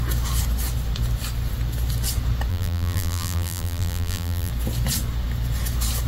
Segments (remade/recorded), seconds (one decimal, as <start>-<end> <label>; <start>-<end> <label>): 0.0-2.5 recorded; 2.5-4.5 remade; 4.5-6.1 recorded